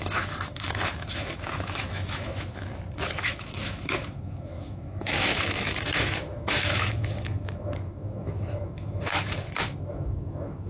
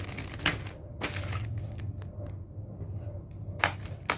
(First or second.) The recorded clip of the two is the second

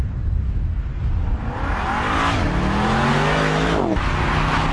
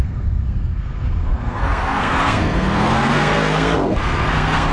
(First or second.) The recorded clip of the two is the first